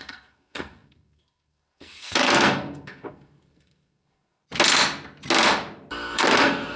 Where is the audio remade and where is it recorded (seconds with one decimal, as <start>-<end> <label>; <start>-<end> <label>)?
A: 0.0-4.4 remade; 4.4-5.9 recorded; 5.9-6.8 remade